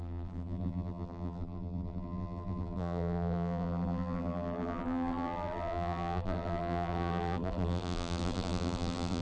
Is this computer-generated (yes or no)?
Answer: yes